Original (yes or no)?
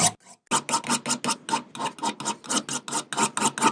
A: yes